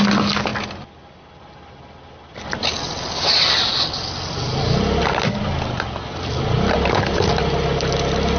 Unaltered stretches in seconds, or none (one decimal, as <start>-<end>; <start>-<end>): 0.0-8.4